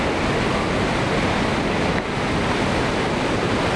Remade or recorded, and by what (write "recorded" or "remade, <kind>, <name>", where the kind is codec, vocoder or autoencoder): recorded